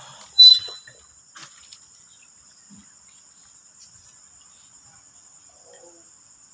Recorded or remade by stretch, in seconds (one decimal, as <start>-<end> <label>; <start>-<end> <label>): 0.0-6.5 recorded